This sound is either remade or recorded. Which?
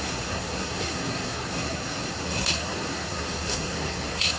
remade